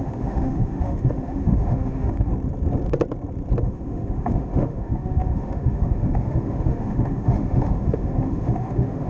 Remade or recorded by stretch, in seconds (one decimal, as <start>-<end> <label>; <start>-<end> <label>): 0.0-2.3 remade; 2.3-3.6 recorded; 3.6-9.1 remade